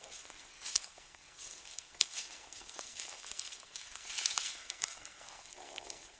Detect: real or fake fake